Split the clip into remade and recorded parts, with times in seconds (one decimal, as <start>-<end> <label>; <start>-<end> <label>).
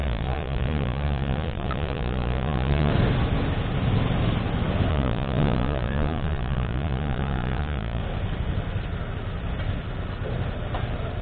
0.0-2.9 remade; 2.9-4.9 recorded; 4.9-8.0 remade; 8.0-11.2 recorded